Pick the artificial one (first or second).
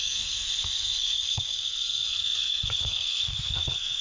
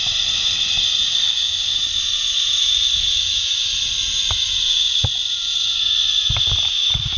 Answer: first